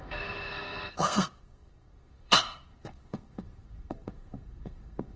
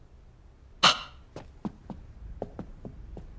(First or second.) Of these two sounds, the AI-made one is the first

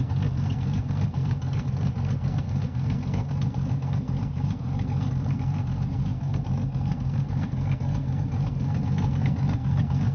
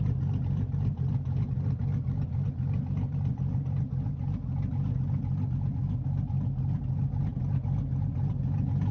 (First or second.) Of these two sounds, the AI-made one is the first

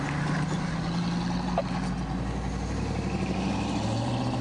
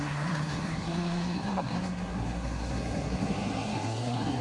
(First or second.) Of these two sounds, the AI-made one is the second